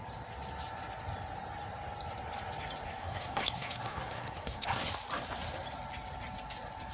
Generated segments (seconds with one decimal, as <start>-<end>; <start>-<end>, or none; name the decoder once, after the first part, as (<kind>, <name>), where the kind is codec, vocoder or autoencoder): 3.0-4.9 (codec, SNAC)